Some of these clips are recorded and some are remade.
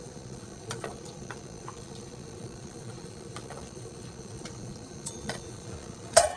remade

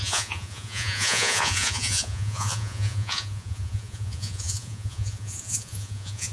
remade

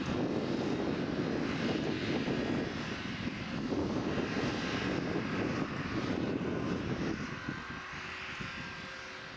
recorded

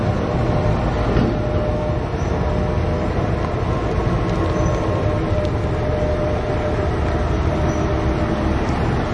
recorded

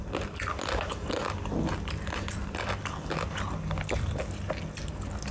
recorded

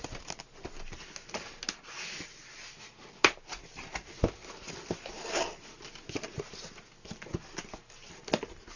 recorded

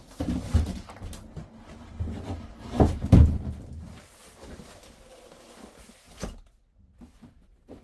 recorded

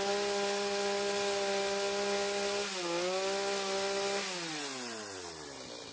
recorded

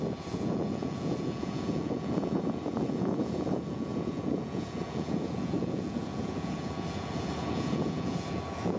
remade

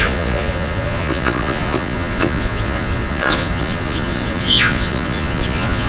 remade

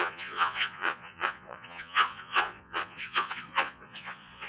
remade